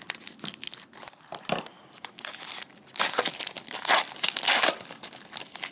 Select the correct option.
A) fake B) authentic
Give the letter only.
B